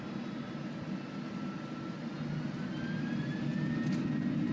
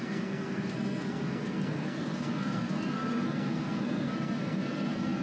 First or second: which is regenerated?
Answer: second